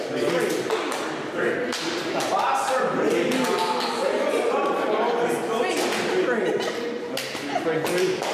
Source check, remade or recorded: recorded